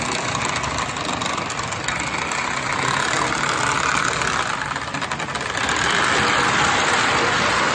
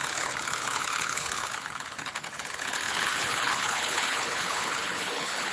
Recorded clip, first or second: first